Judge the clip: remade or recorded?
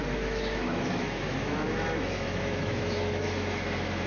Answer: remade